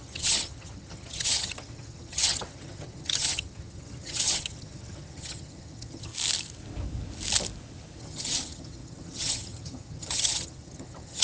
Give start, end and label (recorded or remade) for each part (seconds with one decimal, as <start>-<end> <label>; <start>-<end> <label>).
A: 0.0-6.1 remade; 6.1-8.0 recorded; 8.0-11.2 remade